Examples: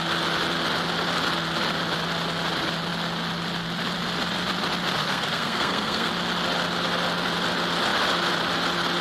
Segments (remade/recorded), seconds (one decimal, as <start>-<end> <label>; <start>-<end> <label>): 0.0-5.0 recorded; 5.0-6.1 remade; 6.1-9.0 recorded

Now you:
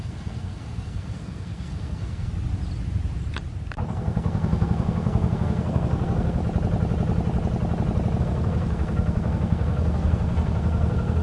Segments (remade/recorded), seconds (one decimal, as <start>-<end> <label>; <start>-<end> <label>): 0.0-2.3 remade; 2.3-3.9 recorded; 3.9-6.4 remade; 6.4-8.2 recorded; 8.2-11.2 remade

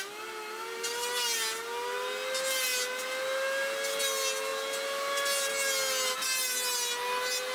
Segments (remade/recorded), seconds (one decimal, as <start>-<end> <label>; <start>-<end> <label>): 0.0-7.5 recorded